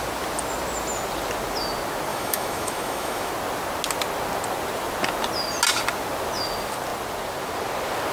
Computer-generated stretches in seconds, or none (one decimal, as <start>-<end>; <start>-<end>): 2.1-3.3